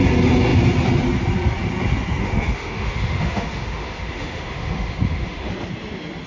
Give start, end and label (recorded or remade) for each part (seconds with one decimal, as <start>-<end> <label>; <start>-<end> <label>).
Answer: 0.0-2.2 recorded; 2.2-5.5 remade; 5.5-6.3 recorded